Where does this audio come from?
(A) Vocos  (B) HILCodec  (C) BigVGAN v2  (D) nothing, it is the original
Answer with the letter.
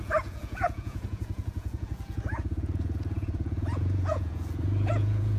A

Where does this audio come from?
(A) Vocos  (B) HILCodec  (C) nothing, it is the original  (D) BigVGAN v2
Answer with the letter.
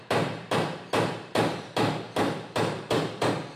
D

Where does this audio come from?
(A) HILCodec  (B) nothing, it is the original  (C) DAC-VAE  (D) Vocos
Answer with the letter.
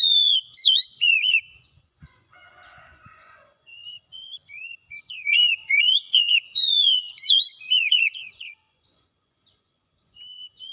D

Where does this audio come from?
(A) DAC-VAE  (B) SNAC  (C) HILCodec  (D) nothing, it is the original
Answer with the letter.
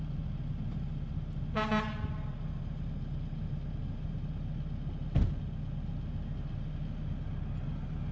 D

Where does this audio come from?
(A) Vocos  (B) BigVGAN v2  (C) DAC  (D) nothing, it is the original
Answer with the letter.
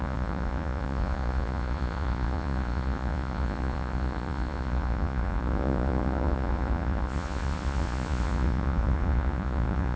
A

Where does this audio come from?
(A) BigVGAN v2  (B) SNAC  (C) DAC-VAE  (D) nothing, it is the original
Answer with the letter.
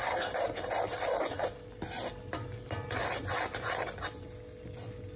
D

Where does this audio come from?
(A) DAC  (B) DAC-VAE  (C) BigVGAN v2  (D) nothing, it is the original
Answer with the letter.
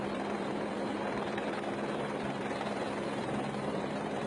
C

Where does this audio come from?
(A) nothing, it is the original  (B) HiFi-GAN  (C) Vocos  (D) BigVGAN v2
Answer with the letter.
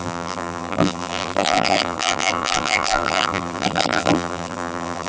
D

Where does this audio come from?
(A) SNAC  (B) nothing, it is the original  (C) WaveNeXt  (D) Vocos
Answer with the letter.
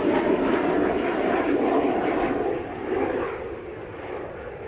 B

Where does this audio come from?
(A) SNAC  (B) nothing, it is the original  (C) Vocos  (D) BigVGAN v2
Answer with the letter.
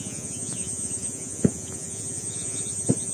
C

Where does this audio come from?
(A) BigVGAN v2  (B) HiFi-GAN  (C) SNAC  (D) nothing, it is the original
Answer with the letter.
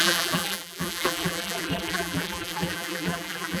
A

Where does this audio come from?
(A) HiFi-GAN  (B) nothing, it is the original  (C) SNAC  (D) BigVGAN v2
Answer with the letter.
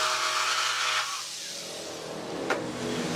B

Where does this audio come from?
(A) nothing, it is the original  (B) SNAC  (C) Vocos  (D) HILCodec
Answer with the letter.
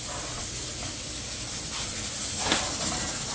A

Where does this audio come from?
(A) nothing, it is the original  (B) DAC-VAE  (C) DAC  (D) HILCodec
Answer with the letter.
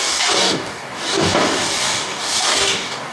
C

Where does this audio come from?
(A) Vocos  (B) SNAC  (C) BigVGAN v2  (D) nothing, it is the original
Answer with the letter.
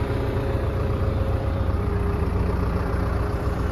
C